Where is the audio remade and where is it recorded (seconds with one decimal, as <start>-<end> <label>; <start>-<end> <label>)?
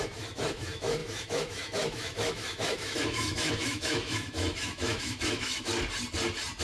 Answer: 0.0-5.7 remade; 5.7-6.6 recorded